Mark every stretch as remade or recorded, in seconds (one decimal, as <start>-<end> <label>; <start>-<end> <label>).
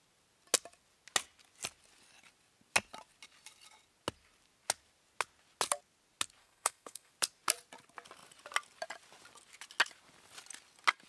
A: 0.0-6.4 recorded; 6.4-7.1 remade; 7.1-11.1 recorded